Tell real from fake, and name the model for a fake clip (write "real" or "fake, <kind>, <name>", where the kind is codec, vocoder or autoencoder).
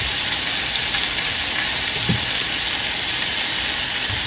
real